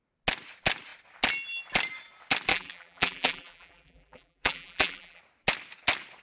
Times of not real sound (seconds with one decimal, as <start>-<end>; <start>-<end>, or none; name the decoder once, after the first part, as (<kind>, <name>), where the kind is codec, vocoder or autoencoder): 2.5-5.2 (vocoder, BigVGAN v2)